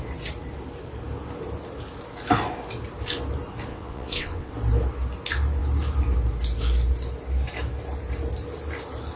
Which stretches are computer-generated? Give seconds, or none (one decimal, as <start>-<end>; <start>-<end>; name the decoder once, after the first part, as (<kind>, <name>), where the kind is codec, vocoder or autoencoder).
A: 3.7-4.5 (vocoder, WaveNeXt)